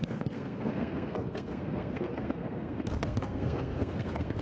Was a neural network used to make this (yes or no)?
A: yes